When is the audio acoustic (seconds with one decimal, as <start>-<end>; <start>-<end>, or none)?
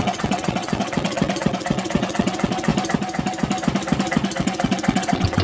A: 2.7-4.4